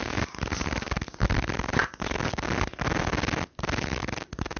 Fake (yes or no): no